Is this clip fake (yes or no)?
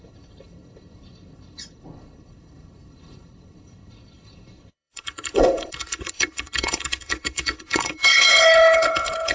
yes